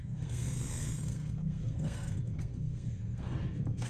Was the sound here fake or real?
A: fake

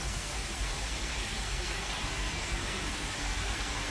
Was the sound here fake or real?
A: fake